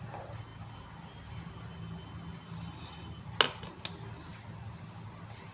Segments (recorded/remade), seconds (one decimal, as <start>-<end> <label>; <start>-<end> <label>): 0.0-5.5 recorded